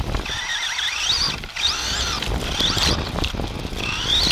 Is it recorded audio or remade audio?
recorded